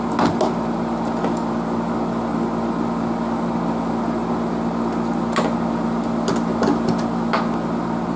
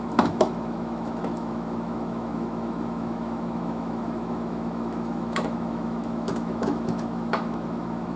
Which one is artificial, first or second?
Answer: second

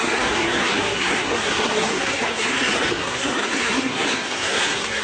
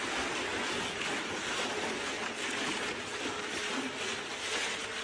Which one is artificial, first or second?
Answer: first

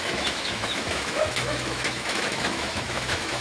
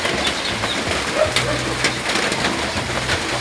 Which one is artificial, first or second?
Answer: first